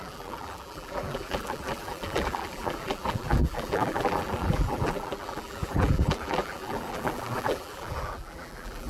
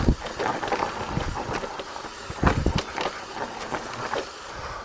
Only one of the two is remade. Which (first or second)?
first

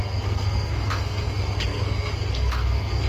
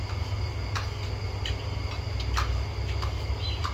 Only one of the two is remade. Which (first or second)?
first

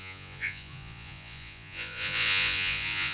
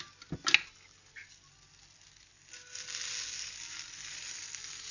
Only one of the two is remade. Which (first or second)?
first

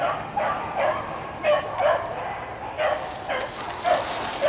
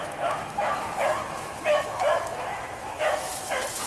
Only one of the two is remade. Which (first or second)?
second